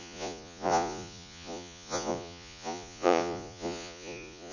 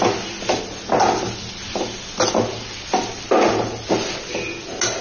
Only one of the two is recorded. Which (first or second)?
second